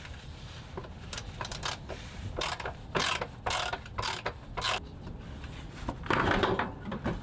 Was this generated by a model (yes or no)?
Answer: no